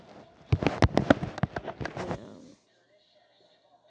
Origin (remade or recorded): recorded